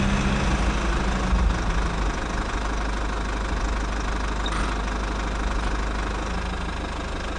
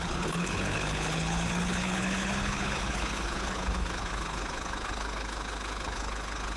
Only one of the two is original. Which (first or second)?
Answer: first